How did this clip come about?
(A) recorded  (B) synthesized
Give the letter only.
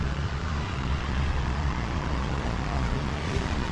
B